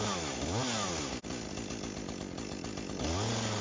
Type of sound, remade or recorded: recorded